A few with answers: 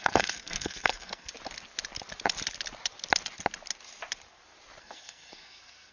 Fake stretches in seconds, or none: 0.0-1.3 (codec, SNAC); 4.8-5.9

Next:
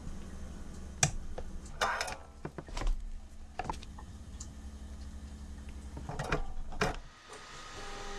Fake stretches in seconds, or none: none

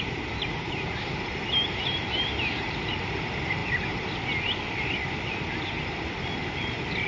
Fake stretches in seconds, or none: 0.0-3.6 (vocoder, BigVGAN v2); 5.9-7.1

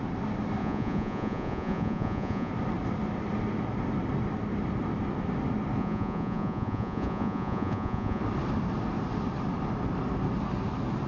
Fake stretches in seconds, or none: 0.6-2.5 (vocoder, Vocos); 5.8-8.2

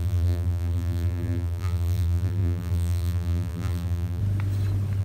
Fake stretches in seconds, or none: 0.0-4.2 (vocoder, BigVGAN v2)